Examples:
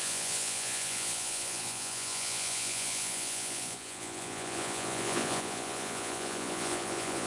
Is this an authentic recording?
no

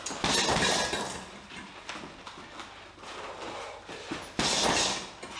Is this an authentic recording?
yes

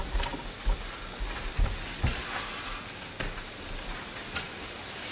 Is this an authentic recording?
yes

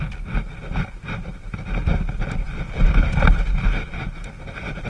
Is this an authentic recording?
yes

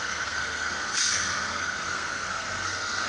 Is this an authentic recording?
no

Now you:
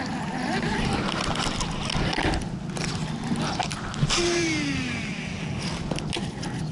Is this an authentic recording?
yes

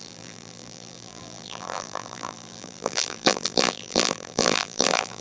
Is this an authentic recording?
no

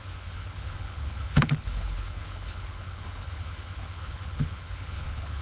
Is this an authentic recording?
no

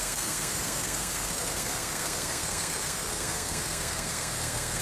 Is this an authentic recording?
no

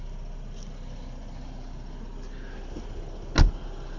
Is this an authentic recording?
yes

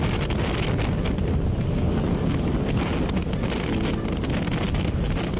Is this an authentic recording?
yes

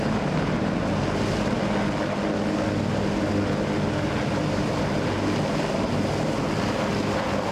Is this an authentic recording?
yes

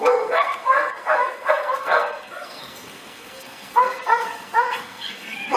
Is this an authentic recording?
no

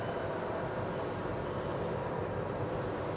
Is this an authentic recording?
no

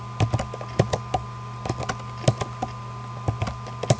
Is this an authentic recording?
yes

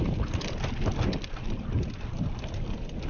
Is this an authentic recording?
yes